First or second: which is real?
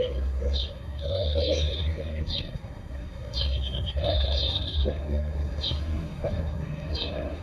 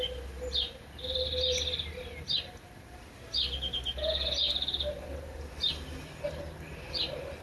second